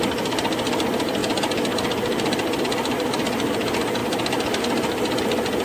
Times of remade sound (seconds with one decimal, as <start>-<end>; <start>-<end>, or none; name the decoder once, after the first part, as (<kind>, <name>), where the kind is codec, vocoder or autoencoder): none